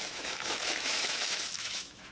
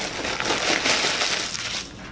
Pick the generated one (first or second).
first